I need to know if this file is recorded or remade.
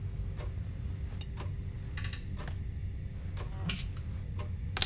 recorded